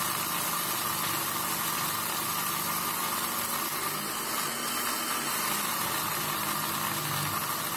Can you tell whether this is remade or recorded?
recorded